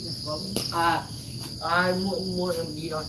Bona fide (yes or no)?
yes